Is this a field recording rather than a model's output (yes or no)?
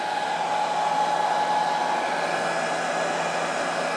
yes